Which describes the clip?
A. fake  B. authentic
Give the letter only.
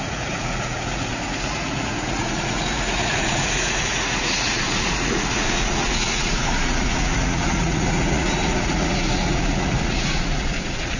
A